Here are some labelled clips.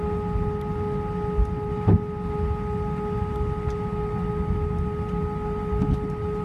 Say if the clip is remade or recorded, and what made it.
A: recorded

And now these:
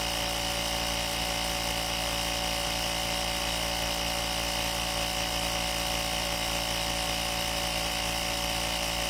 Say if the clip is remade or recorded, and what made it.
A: recorded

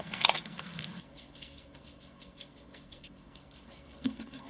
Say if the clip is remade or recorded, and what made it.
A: remade, codec, SNAC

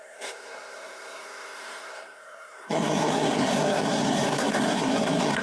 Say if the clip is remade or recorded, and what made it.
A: remade, codec, SNAC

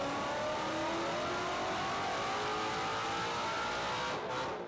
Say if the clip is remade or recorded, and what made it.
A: recorded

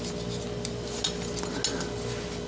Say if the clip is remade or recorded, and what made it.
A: recorded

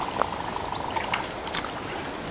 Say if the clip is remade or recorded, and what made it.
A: recorded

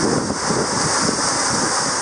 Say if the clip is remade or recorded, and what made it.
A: recorded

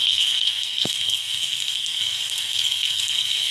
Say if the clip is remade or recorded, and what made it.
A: remade, codec, SNAC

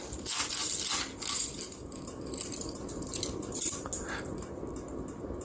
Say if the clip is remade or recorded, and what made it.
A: recorded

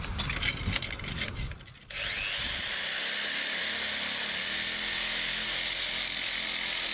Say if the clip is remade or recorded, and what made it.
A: recorded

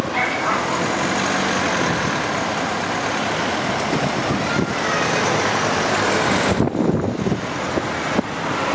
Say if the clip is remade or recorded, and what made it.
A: recorded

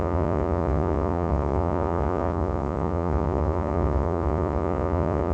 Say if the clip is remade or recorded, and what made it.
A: remade, vocoder, Vocos